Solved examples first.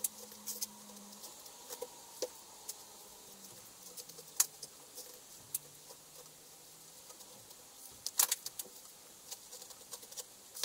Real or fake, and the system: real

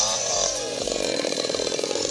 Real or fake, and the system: fake, vocoder, Vocos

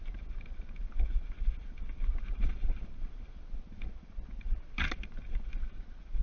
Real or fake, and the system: real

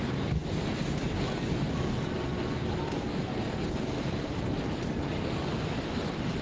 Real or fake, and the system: real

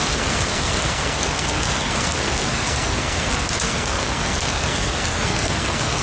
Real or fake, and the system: fake, codec, SNAC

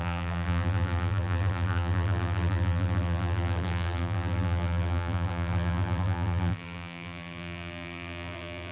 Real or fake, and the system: fake, vocoder, BigVGAN v2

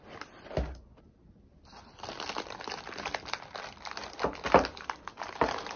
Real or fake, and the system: real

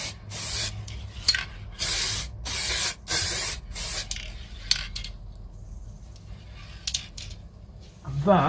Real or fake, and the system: real